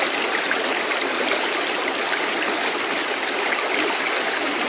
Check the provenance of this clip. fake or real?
real